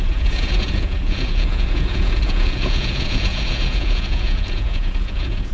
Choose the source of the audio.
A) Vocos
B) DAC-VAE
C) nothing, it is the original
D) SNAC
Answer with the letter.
A